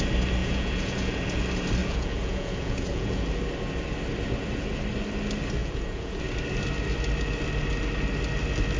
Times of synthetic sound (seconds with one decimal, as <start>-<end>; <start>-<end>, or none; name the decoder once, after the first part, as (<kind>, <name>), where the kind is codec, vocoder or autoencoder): 0.4-1.4 (vocoder, Vocos); 1.8-3.3; 5.6-6.2

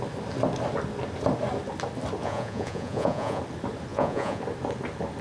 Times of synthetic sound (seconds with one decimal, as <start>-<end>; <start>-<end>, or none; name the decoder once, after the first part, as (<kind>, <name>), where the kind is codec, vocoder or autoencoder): 2.2-3.4 (vocoder, Vocos); 3.9-4.4